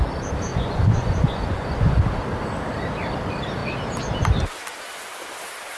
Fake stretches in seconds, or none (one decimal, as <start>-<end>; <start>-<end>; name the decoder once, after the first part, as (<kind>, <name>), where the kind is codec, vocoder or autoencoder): 0.5-2.0 (vocoder, Vocos)